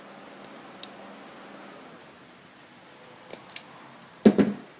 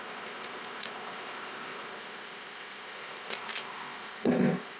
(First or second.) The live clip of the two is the first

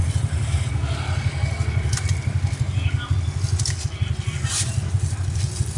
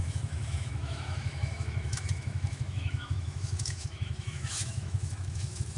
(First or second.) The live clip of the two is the first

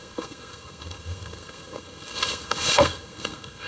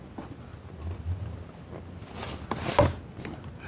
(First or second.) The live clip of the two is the second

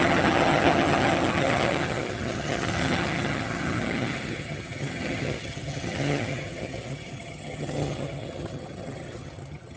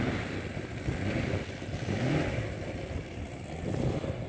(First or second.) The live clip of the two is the second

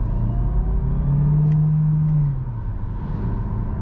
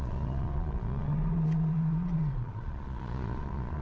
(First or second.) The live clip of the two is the first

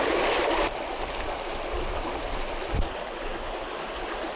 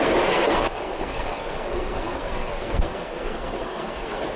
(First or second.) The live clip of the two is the first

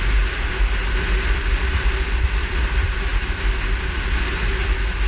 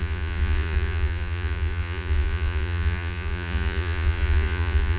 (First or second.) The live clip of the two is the first